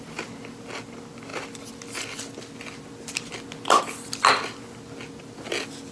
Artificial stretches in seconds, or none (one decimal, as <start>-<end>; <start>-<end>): none